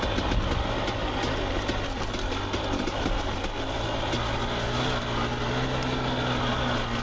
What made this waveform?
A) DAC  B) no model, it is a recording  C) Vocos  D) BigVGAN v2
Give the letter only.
B